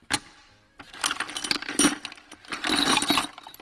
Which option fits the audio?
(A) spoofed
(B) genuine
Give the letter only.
B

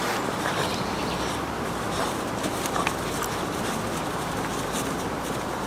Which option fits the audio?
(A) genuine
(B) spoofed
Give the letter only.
B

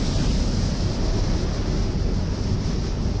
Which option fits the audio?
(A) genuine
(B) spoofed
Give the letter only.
A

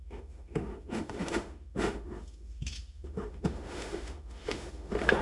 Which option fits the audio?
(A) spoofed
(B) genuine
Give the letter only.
A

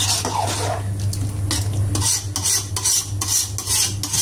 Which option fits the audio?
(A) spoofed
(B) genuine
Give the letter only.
B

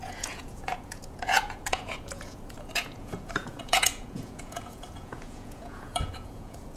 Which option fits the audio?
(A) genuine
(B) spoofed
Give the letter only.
B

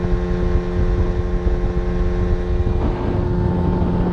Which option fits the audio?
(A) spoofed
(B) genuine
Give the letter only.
B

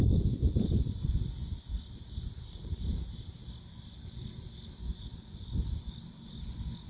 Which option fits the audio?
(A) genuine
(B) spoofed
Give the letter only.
A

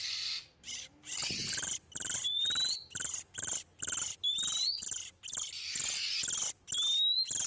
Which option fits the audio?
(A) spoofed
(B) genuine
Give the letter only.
B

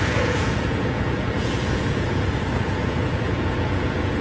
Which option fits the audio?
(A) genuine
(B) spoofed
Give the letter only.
B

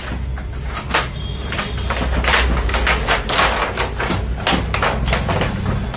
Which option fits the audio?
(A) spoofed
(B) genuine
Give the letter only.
B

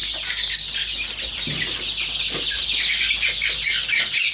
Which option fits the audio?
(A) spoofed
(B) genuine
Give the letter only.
B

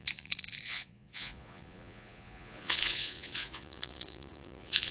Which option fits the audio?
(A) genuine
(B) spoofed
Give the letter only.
B